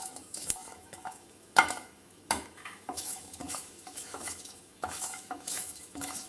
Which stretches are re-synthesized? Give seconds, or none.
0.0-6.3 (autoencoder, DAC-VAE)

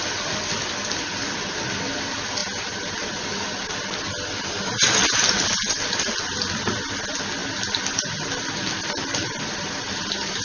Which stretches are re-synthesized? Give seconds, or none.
0.6-1.4 (vocoder, BigVGAN v2); 7.4-9.6

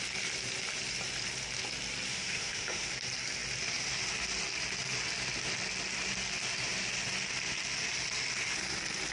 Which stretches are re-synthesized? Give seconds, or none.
2.1-2.9 (autoencoder, DAC-VAE)

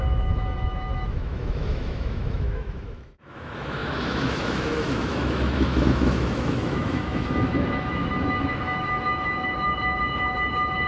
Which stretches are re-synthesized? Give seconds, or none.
0.0-10.9 (autoencoder, DAC-VAE)

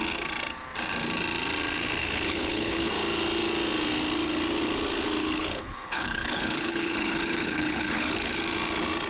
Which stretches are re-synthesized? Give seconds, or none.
2.0-2.9 (codec, HILCodec); 5.2-8.4

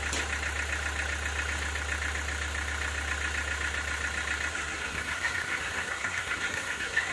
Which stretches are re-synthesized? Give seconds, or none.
4.5-7.1 (codec, SNAC)

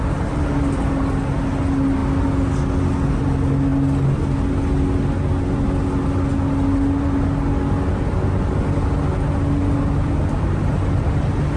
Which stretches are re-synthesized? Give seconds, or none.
none